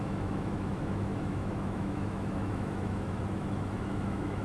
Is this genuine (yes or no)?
no